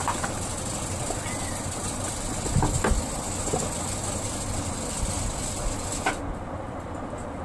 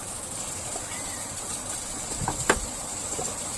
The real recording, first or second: first